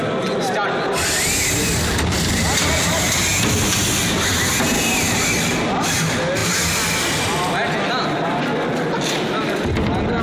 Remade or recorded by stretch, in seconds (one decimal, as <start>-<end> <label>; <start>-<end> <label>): 0.0-10.2 recorded